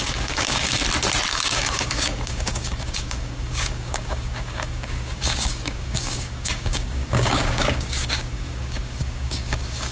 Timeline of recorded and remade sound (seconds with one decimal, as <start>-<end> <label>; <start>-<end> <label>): 0.0-0.8 remade; 0.8-1.3 recorded; 1.3-9.9 remade

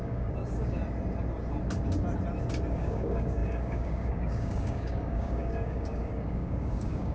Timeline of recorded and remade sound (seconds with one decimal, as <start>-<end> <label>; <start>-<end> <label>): 0.0-0.8 remade; 0.8-2.7 recorded; 2.7-7.1 remade

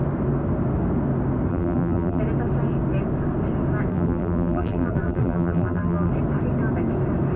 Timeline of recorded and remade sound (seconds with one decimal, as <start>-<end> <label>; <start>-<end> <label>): 0.0-1.5 recorded; 1.5-2.2 remade; 2.2-3.9 recorded; 3.9-6.1 remade; 6.1-7.4 recorded

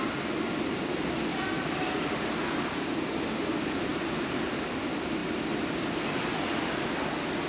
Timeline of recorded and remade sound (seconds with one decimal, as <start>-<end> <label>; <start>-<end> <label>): 0.0-3.9 recorded; 3.9-4.5 remade; 4.5-5.2 recorded; 5.2-7.5 remade

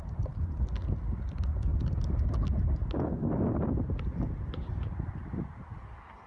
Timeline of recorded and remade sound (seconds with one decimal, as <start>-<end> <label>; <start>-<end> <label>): 0.0-6.3 recorded

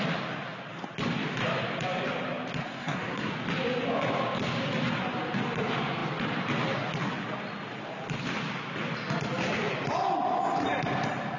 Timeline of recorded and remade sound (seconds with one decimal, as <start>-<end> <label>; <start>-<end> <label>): 0.0-2.6 recorded; 2.6-3.3 remade; 3.3-11.4 recorded